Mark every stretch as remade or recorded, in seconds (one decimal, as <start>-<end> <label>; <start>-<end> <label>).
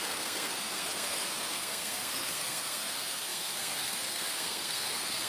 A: 0.0-5.3 remade